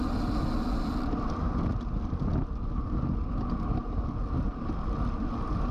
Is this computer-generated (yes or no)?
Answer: no